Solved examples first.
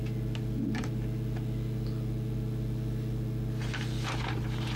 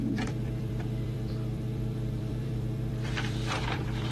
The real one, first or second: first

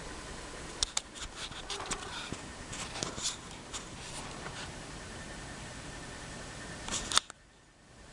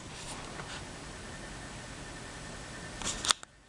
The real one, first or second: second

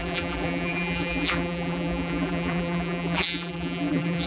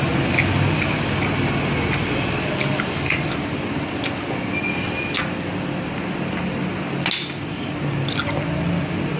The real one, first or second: second